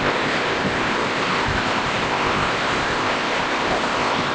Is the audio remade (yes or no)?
yes